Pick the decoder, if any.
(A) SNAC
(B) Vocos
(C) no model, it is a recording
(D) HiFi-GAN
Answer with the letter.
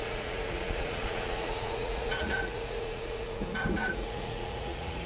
B